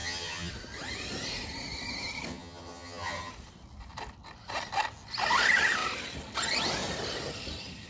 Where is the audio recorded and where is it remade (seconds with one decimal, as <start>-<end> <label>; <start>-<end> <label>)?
0.0-0.5 remade; 0.5-2.3 recorded; 2.3-3.3 remade; 3.3-7.9 recorded